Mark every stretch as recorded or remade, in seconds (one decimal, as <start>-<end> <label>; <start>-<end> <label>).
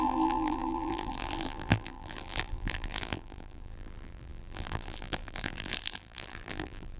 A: 0.0-7.0 remade